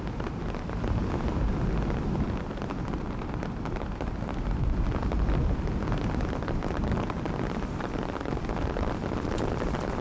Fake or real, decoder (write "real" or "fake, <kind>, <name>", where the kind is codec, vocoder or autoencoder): real